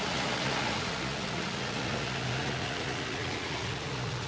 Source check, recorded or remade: remade